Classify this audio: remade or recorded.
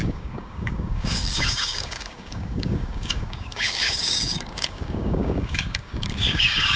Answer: remade